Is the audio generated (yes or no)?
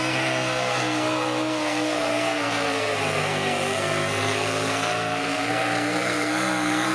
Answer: yes